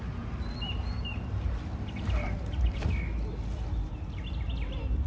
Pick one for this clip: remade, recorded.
recorded